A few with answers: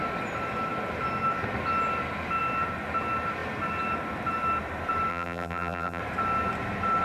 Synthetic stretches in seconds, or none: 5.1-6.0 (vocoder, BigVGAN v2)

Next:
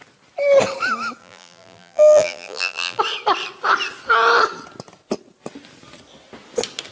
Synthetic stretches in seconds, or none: 1.2-3.0 (vocoder, BigVGAN v2)

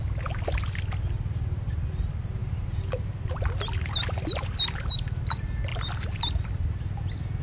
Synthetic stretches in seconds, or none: 2.4-3.5 (vocoder, BigVGAN v2)

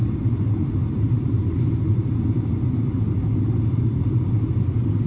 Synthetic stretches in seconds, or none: 0.0-1.3 (vocoder, BigVGAN v2)